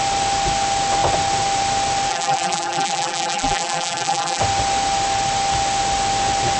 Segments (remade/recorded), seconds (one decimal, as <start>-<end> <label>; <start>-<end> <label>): 0.0-2.1 recorded; 2.1-4.4 remade; 4.4-6.6 recorded

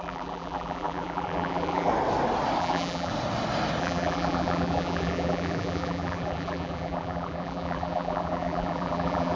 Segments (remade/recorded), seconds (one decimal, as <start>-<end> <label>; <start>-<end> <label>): 0.0-1.9 remade; 1.9-2.6 recorded; 2.6-3.1 remade; 3.1-3.8 recorded; 3.8-9.3 remade